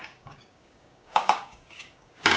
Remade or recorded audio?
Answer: remade